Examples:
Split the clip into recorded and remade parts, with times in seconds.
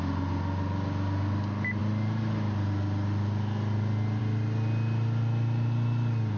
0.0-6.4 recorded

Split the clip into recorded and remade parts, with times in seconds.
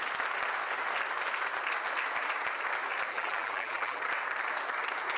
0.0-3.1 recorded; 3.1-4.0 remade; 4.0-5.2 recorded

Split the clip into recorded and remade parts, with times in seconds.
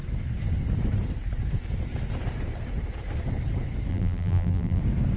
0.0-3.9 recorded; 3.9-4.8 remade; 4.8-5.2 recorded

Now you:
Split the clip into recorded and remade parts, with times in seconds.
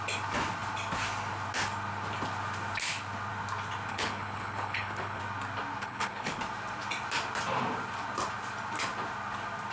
0.0-3.9 recorded; 3.9-5.2 remade; 5.2-5.8 recorded; 5.8-6.4 remade; 6.4-9.7 recorded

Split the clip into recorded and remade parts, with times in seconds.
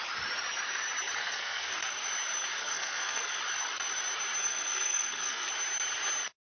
0.0-1.2 recorded; 1.2-1.9 remade; 1.9-2.6 recorded; 2.6-3.4 remade; 3.4-4.4 recorded; 4.4-5.5 remade; 5.5-6.6 recorded